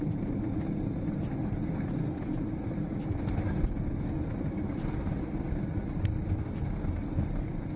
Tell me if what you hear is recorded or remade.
recorded